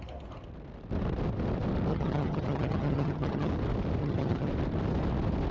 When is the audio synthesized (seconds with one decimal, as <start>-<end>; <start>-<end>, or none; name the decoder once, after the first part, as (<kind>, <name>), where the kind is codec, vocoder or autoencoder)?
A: 1.9-3.5 (vocoder, HiFi-GAN); 4.0-4.5